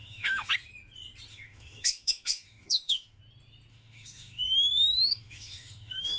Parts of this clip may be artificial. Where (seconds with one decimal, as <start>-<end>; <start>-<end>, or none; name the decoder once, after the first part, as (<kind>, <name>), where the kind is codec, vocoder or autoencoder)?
0.0-0.5 (autoencoder, DAC-VAE); 1.3-3.2; 3.7-6.2